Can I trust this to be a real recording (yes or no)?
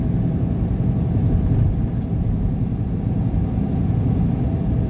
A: yes